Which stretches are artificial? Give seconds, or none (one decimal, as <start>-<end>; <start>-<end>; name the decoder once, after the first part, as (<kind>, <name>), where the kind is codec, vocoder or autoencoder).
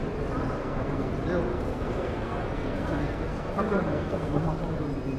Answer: 0.6-1.1 (codec, SNAC); 1.5-4.6